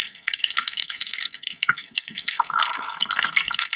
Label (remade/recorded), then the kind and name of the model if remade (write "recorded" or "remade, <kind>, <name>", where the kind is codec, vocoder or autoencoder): remade, codec, SNAC